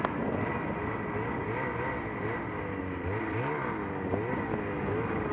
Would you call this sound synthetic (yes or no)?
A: no